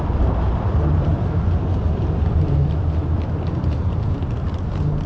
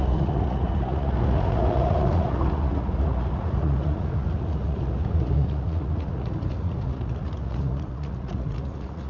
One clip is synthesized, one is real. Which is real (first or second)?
first